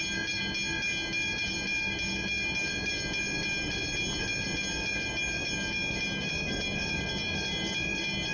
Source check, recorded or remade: recorded